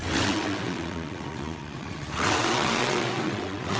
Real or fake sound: fake